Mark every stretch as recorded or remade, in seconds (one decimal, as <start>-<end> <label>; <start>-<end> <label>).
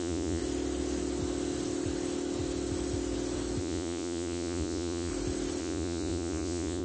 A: 0.0-0.4 remade; 0.4-3.6 recorded; 3.6-5.1 remade; 5.1-5.6 recorded; 5.6-6.8 remade